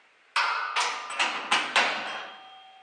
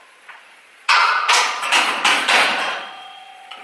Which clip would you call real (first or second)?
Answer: first